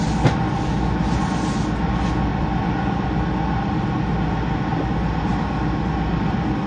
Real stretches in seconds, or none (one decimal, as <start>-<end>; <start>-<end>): 0.0-6.7